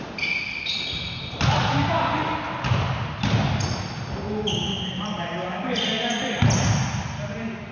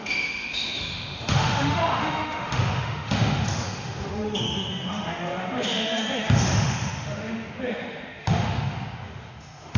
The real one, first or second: first